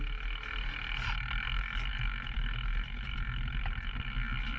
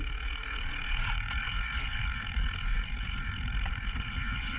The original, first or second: first